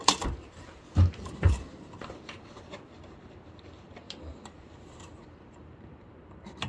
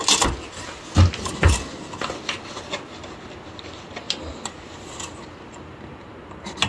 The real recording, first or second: second